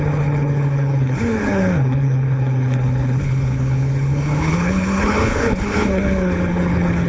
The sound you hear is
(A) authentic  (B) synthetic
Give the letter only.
B